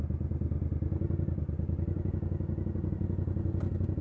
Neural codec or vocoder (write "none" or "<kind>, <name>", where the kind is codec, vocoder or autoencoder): none